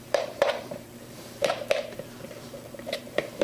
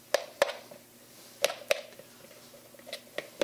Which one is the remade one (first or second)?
first